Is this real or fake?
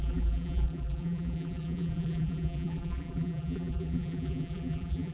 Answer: fake